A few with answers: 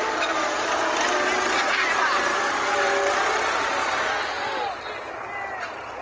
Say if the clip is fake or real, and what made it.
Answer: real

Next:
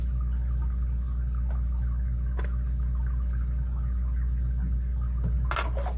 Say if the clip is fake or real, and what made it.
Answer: real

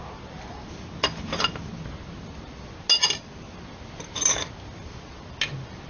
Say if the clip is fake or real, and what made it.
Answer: real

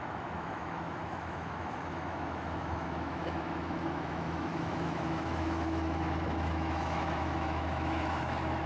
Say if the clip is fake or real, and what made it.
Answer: fake, autoencoder, DAC-VAE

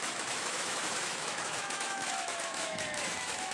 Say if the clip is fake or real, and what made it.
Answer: fake, autoencoder, DAC-VAE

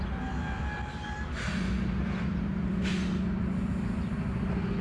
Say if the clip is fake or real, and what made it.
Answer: real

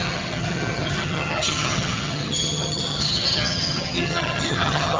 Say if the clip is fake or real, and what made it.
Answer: fake, vocoder, HiFi-GAN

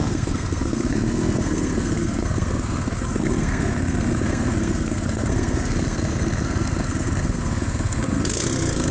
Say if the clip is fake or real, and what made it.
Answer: fake, codec, SNAC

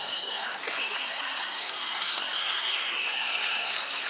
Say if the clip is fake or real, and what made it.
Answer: fake, codec, SNAC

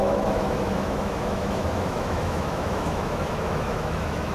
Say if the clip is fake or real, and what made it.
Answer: fake, autoencoder, DAC-VAE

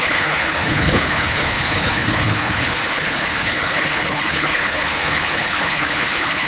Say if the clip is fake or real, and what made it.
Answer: fake, codec, HILCodec